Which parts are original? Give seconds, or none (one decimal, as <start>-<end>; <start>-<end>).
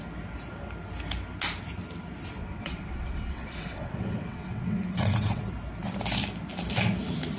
0.0-2.4; 5.4-7.4